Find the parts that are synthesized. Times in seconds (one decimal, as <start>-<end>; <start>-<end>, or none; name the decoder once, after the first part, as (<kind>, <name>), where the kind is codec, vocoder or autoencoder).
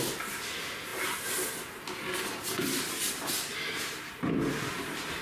none